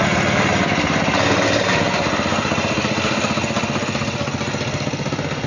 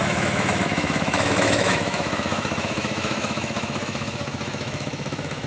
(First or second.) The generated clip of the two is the second